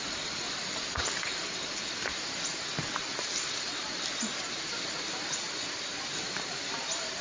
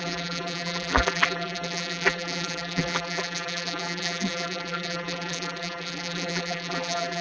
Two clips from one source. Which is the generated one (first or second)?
second